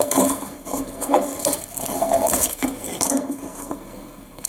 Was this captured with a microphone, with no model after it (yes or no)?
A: no